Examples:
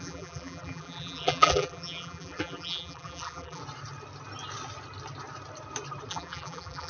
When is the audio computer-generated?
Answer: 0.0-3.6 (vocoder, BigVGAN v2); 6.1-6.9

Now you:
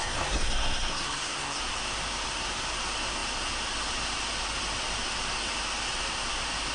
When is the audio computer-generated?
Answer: 0.0-1.6 (codec, SNAC)

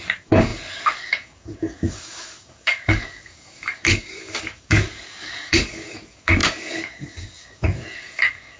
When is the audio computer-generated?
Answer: 0.0-8.6 (codec, DAC)

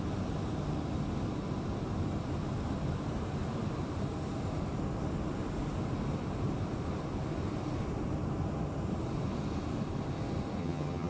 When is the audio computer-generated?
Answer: 10.6-11.1 (vocoder, HiFi-GAN)

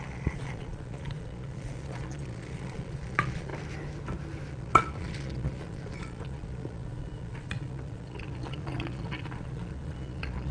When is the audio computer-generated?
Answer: 0.0-3.5 (vocoder, Vocos); 4.5-10.5

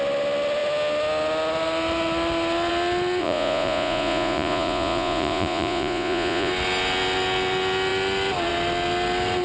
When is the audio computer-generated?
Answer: 3.2-6.5 (vocoder, Vocos)